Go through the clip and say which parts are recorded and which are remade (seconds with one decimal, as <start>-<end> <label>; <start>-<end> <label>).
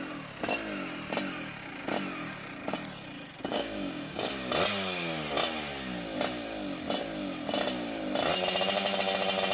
0.0-3.5 recorded; 3.5-4.3 remade; 4.3-9.5 recorded